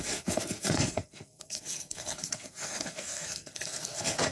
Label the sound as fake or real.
fake